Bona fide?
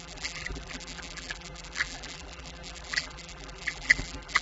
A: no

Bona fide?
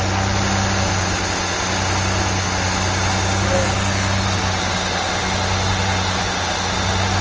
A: yes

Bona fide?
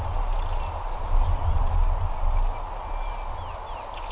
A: yes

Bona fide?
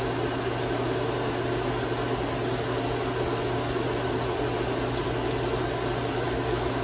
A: yes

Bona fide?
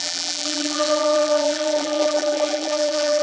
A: no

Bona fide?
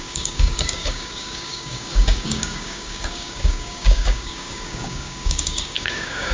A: no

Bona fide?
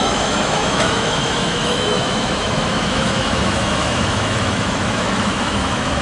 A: no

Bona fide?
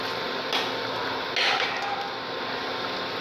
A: yes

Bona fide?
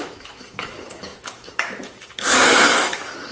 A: no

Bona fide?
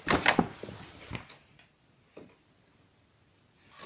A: yes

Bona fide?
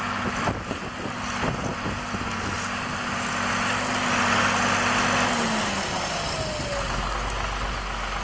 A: yes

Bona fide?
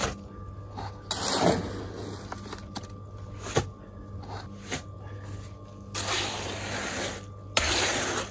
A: yes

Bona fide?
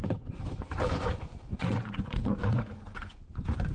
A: no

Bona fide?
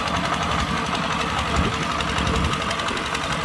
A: yes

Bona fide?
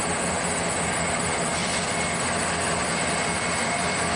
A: yes